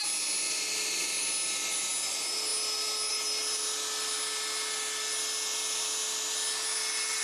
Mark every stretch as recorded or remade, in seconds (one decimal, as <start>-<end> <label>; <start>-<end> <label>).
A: 0.0-7.2 recorded